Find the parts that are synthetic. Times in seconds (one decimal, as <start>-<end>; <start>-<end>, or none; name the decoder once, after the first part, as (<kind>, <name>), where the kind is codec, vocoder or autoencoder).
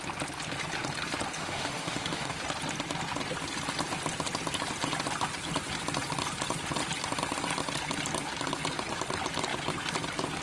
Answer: 1.4-2.4 (autoencoder, DAC-VAE)